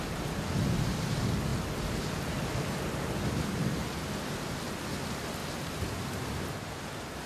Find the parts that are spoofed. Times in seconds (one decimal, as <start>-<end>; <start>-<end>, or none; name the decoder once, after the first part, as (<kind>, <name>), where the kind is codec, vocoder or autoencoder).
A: 1.5-4.3 (vocoder, BigVGAN v2); 5.4-6.5